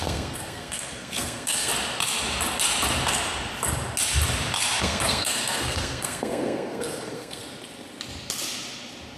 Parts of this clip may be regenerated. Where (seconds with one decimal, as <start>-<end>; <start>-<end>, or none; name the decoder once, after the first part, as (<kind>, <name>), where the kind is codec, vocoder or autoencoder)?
0.0-1.7 (codec, SNAC); 4.8-7.4